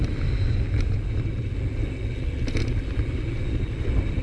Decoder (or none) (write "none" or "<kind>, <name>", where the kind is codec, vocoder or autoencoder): none